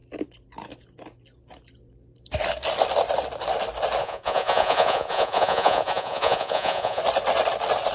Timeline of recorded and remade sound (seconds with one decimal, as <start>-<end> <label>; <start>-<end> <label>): 0.0-4.0 recorded; 4.0-7.0 remade; 7.0-7.9 recorded